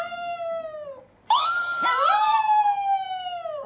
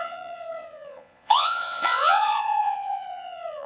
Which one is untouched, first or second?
first